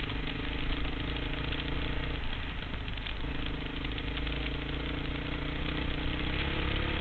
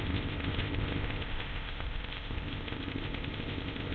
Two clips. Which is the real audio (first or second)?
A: first